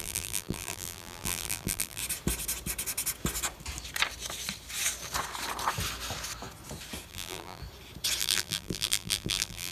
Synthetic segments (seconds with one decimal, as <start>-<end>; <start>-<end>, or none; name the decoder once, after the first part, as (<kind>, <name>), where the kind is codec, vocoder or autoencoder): 0.0-2.0 (vocoder, BigVGAN v2); 7.1-7.6; 8.2-9.7